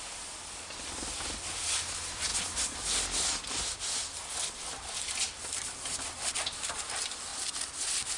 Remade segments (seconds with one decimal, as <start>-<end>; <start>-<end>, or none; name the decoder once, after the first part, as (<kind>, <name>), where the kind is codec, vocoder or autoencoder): 0.0-8.2 (vocoder, BigVGAN v2)